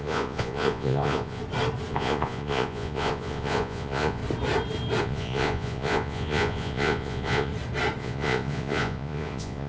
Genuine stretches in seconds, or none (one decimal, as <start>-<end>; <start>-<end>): 1.4-1.9; 4.2-5.0; 7.5-8.0